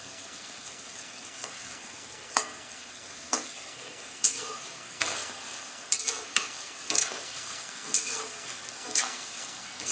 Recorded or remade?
remade